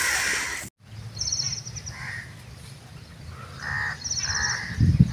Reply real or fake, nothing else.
real